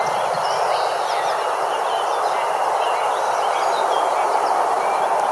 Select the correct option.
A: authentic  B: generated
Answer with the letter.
A